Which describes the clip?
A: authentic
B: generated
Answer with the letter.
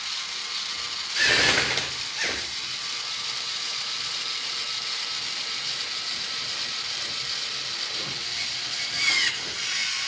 B